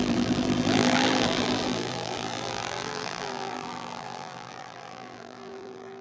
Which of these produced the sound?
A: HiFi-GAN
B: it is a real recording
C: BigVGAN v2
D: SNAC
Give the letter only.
C